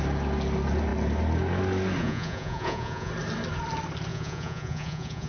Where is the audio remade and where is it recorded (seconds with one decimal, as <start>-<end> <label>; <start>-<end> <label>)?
0.0-2.0 recorded; 2.0-3.1 remade; 3.1-4.1 recorded; 4.1-5.3 remade

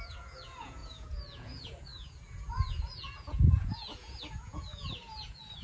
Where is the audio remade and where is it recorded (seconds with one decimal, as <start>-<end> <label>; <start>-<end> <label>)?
0.0-5.6 remade

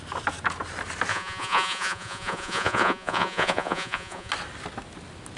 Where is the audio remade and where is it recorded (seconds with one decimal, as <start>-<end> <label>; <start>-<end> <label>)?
0.0-1.1 recorded; 1.1-4.3 remade; 4.3-5.4 recorded

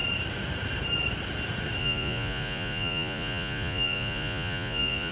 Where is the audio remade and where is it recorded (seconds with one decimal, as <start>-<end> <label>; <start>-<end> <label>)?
0.0-1.8 recorded; 1.8-5.1 remade

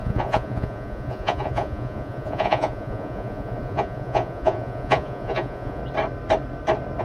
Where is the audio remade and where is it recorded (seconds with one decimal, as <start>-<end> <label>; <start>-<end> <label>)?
0.0-5.8 remade; 5.8-7.0 recorded